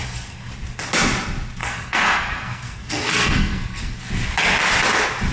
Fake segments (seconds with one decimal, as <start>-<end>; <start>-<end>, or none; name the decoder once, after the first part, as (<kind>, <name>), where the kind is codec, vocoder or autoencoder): 0.0-0.5 (codec, SNAC); 1.6-3.9